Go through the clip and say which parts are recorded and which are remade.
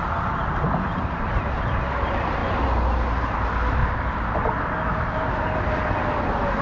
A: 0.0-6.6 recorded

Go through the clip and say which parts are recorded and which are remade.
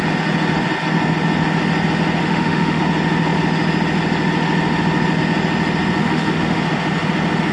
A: 0.0-2.2 recorded; 2.2-2.8 remade; 2.8-6.0 recorded; 6.0-6.6 remade; 6.6-7.5 recorded